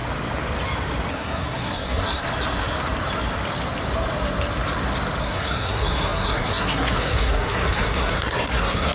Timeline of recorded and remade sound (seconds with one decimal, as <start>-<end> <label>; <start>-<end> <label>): 0.0-1.1 recorded; 1.1-2.2 remade; 2.2-5.2 recorded; 5.2-8.9 remade